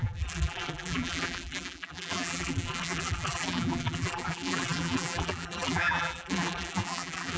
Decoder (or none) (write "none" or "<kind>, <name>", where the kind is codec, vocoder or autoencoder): vocoder, BigVGAN v2